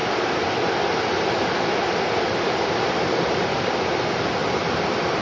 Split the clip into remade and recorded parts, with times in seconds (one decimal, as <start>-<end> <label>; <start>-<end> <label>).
0.0-5.2 remade